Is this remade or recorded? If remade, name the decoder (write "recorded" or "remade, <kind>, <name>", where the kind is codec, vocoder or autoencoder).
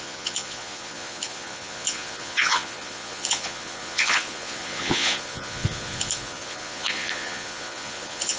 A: remade, vocoder, Vocos